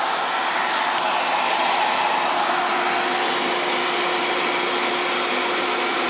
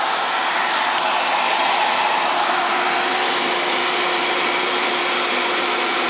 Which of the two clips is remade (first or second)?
second